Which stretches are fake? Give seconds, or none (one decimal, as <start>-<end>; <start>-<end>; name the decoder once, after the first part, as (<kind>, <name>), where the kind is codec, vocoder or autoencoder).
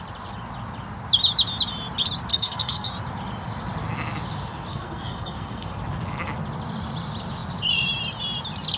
2.3-2.9 (codec, SNAC); 4.7-5.7